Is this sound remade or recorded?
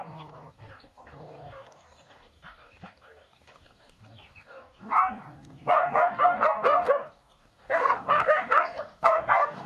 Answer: remade